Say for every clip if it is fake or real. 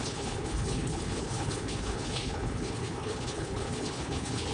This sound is fake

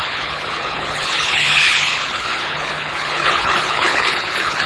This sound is fake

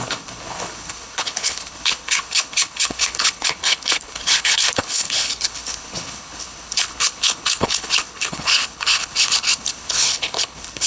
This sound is fake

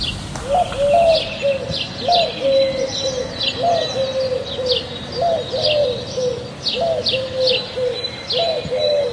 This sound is real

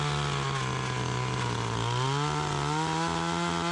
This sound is real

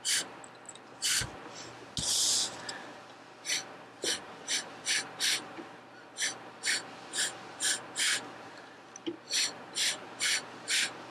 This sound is real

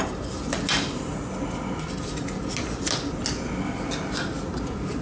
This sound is real